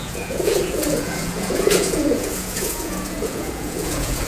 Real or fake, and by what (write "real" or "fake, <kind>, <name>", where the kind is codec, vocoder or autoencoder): fake, vocoder, Vocos